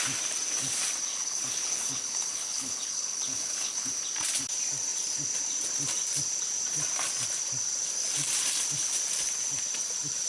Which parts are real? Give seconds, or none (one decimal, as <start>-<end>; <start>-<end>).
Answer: 0.0-1.1; 3.9-10.3